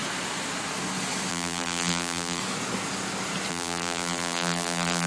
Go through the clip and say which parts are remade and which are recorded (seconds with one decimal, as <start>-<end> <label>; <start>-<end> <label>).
0.0-1.3 recorded; 1.3-2.4 remade; 2.4-3.5 recorded; 3.5-5.1 remade

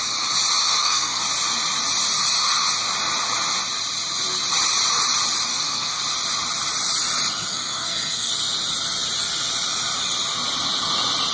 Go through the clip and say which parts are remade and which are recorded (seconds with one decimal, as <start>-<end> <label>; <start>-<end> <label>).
0.0-0.7 recorded; 0.7-1.2 remade; 1.2-5.5 recorded; 5.5-6.0 remade; 6.0-7.5 recorded; 7.5-8.3 remade; 8.3-11.3 recorded

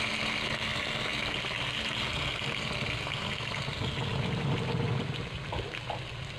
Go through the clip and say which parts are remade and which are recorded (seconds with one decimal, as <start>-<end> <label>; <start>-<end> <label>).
0.0-6.4 recorded

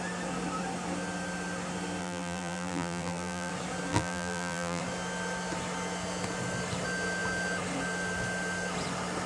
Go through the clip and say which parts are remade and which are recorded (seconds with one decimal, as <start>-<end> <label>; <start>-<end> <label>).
0.0-2.0 recorded; 2.0-3.5 remade; 3.5-3.9 recorded; 3.9-4.8 remade; 4.8-9.3 recorded